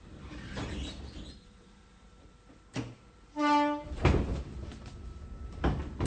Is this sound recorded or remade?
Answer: recorded